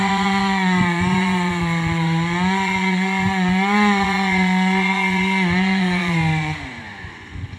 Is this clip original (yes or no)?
no